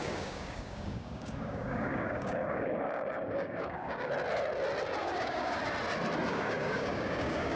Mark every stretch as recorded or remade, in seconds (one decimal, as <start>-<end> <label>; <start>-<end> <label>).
0.0-4.1 remade; 4.1-5.0 recorded; 5.0-5.6 remade; 5.6-6.3 recorded; 6.3-7.6 remade

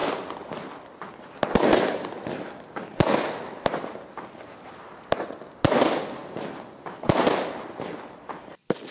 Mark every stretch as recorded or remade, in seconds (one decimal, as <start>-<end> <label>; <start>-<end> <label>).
0.0-8.9 recorded

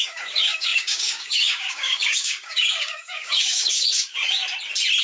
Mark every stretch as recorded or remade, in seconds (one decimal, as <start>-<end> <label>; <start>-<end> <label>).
0.0-4.4 remade; 4.4-5.0 recorded

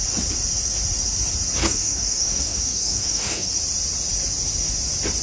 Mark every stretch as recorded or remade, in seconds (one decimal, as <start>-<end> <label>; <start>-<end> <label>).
0.0-1.6 recorded; 1.6-3.5 remade; 3.5-5.2 recorded

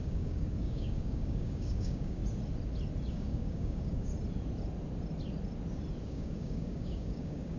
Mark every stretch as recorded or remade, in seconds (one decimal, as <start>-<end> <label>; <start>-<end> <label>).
0.0-2.2 remade; 2.2-3.1 recorded; 3.1-4.1 remade; 4.1-6.1 recorded; 6.1-7.6 remade

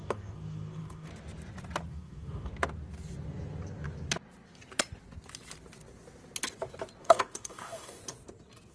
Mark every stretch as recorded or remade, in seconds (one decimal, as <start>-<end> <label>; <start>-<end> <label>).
0.0-1.1 remade; 1.1-1.9 recorded; 1.9-2.5 remade; 2.5-7.0 recorded; 7.0-8.0 remade; 8.0-8.7 recorded

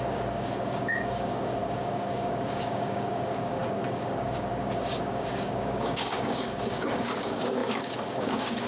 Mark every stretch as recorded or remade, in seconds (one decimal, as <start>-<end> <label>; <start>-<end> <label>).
0.0-8.7 remade

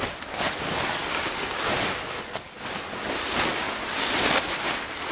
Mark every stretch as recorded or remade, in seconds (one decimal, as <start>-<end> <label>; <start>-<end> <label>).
0.0-1.0 recorded; 1.0-1.8 remade; 1.8-5.1 recorded